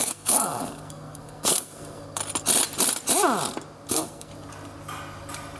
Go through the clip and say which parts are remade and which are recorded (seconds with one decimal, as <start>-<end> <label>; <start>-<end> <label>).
0.0-2.2 remade; 2.2-3.9 recorded; 3.9-4.3 remade; 4.3-5.6 recorded